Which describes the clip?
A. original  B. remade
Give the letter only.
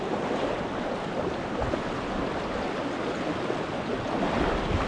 A